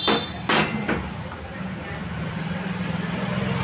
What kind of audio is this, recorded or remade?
recorded